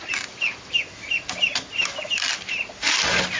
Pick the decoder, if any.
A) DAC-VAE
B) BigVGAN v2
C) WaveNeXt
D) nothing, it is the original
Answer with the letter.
D